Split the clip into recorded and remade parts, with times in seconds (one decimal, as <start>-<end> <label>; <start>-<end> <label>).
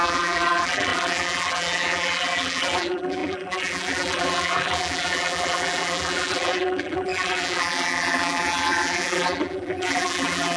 0.0-10.6 remade